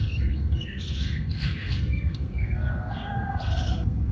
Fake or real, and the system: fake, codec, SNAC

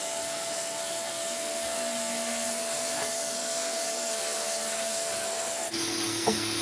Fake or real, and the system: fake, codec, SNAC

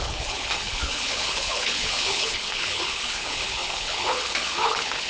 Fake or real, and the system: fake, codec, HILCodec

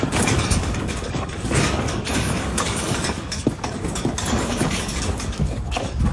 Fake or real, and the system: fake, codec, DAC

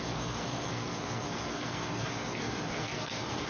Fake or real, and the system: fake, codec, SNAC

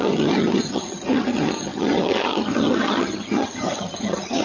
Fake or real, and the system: fake, vocoder, HiFi-GAN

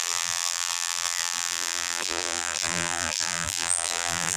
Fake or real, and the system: fake, vocoder, BigVGAN v2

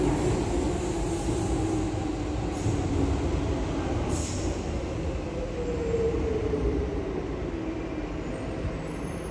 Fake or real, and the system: real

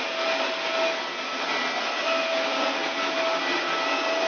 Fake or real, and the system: real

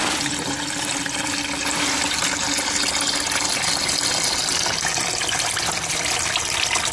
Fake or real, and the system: real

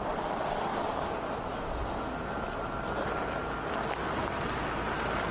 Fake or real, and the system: real